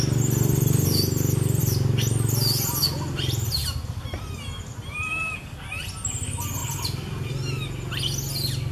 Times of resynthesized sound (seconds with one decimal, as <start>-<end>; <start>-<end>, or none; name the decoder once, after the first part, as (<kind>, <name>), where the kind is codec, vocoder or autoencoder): none